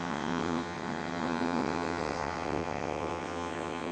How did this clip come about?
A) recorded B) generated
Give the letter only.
B